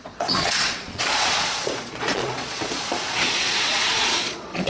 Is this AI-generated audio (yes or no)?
yes